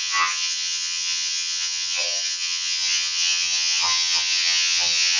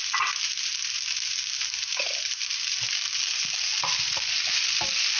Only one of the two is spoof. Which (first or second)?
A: first